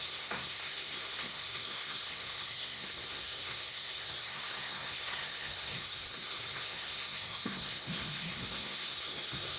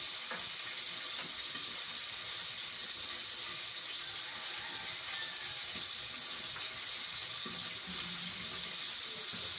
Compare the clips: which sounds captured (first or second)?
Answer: second